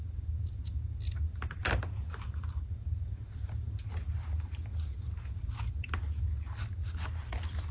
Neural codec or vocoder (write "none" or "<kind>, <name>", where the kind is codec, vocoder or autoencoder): none